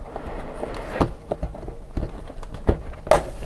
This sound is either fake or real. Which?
real